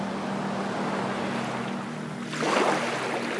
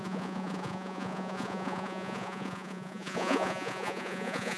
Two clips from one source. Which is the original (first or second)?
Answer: first